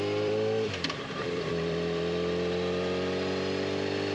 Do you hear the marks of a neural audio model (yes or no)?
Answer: yes